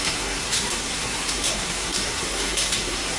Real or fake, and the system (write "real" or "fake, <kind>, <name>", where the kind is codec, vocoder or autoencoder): fake, codec, SNAC